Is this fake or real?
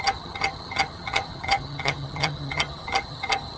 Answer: fake